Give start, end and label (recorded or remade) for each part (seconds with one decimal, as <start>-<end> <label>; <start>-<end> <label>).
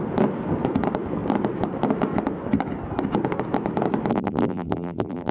0.0-4.1 recorded; 4.1-5.3 remade